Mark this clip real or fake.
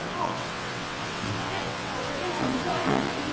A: fake